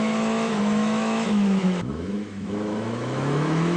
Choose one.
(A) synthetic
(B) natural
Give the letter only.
A